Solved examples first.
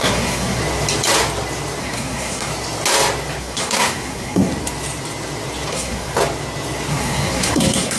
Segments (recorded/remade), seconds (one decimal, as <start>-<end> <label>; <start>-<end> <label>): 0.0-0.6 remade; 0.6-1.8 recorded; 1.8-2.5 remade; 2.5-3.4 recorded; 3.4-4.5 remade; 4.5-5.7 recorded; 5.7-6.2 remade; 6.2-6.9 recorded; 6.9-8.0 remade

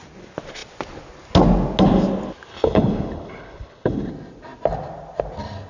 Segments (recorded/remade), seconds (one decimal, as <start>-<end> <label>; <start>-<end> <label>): 0.0-2.5 recorded; 2.5-4.1 remade; 4.1-5.7 recorded

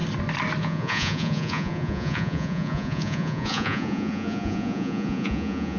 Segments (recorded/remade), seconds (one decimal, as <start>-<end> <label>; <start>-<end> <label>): 0.0-0.6 recorded; 0.6-5.8 remade